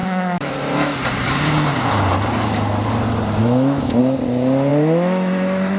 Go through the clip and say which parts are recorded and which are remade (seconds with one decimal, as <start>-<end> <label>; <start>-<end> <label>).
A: 0.0-0.5 remade; 0.5-3.4 recorded; 3.4-4.0 remade; 4.0-4.7 recorded; 4.7-5.8 remade